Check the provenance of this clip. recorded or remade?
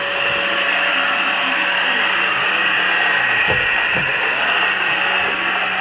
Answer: recorded